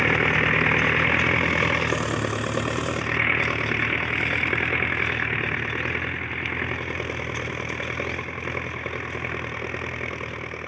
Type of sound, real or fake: real